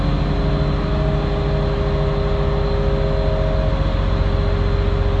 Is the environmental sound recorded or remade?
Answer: recorded